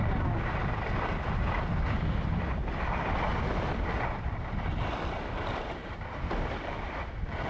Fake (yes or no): no